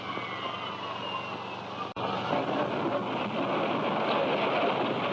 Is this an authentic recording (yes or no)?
yes